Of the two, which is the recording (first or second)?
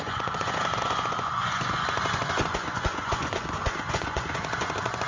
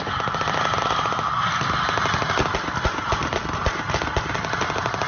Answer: second